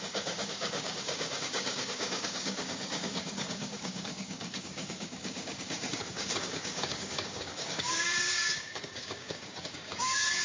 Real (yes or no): no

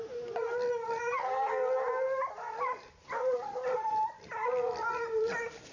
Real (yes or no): yes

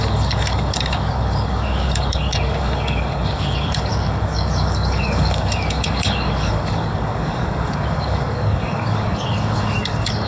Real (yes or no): no